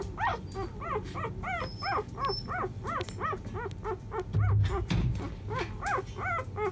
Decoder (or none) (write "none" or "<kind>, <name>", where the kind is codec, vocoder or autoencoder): none